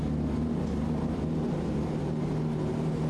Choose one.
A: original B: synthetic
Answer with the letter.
A